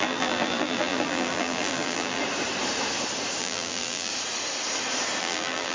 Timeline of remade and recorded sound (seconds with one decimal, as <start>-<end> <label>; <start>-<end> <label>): 0.0-2.2 remade; 2.2-3.4 recorded; 3.4-4.1 remade; 4.1-5.2 recorded; 5.2-5.7 remade